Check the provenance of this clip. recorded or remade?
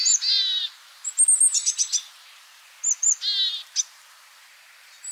recorded